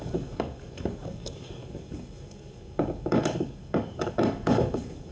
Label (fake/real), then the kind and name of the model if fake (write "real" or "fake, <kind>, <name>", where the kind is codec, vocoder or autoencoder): fake, codec, DAC